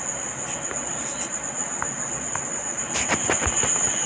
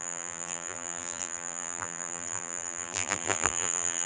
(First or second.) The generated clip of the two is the second